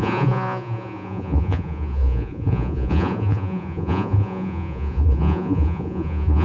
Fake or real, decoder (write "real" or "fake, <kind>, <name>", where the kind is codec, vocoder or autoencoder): fake, vocoder, Vocos